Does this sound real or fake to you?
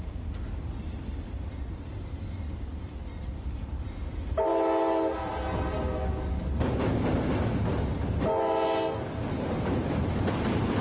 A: real